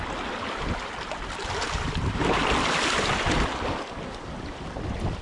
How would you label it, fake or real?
real